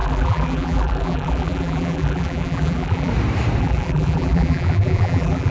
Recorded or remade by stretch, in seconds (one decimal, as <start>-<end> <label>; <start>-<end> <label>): 0.0-3.1 remade; 3.1-3.6 recorded; 3.6-5.5 remade